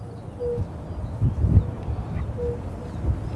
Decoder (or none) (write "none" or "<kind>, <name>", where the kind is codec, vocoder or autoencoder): none